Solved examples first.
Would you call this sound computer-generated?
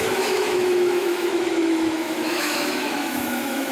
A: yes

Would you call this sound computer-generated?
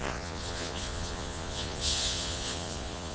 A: yes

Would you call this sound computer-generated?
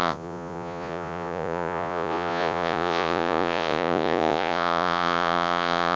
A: yes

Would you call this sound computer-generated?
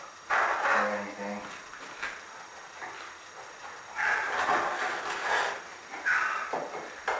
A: no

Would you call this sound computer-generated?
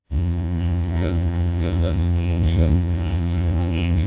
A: yes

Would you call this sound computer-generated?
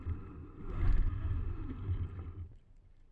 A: no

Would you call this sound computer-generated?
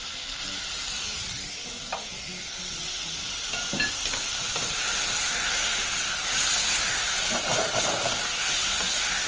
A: no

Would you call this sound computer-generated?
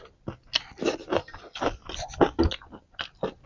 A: no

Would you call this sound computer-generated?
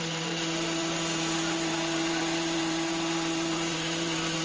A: yes